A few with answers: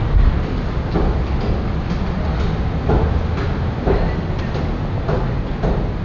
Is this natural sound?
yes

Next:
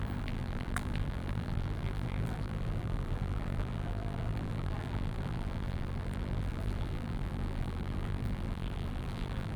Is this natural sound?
no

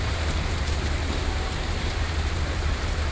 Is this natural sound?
no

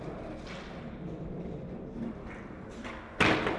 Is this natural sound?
yes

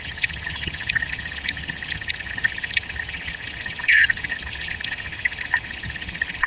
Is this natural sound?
no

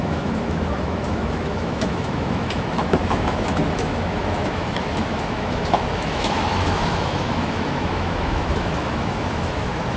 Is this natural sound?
no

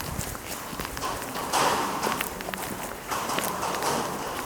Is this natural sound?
yes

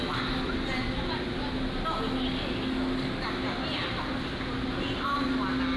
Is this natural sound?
yes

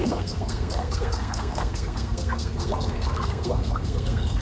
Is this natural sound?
no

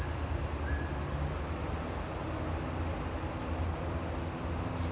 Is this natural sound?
yes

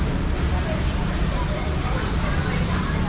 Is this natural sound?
yes